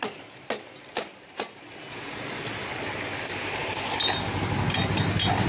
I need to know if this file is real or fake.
real